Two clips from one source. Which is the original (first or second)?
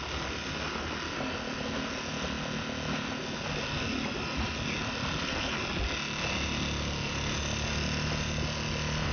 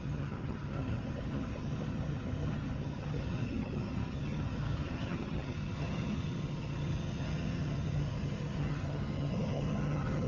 first